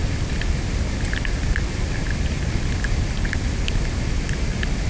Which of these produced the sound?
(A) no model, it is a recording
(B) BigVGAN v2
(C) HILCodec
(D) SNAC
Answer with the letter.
A